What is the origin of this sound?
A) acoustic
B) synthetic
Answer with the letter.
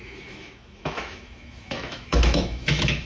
B